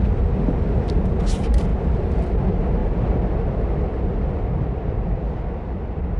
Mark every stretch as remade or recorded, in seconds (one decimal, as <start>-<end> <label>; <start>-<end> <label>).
0.0-1.7 recorded; 1.7-2.4 remade; 2.4-2.8 recorded; 2.8-5.4 remade; 5.4-6.2 recorded